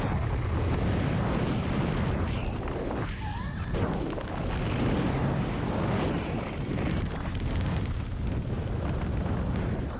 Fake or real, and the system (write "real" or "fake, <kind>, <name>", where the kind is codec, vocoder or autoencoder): real